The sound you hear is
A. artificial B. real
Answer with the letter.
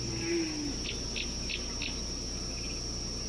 B